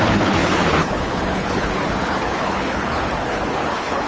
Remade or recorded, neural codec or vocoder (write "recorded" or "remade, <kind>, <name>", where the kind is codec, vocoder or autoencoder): remade, codec, HILCodec